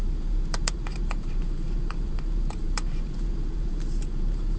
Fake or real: fake